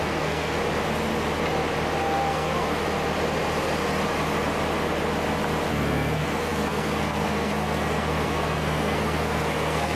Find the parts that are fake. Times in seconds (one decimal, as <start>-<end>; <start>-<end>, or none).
0.0-0.6; 2.0-2.8; 5.7-10.0